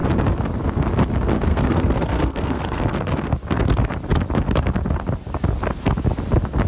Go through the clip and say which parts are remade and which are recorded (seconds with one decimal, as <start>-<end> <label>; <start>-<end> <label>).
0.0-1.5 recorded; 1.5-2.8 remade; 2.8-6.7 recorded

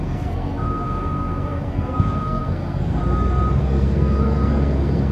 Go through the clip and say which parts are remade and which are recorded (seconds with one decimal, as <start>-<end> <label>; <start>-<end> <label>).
0.0-3.0 remade; 3.0-3.6 recorded; 3.6-5.1 remade

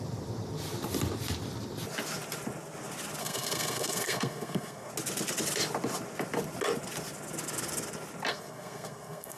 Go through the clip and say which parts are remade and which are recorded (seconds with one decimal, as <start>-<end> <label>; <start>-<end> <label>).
0.0-3.2 recorded; 3.2-4.9 remade; 4.9-8.3 recorded; 8.3-9.4 remade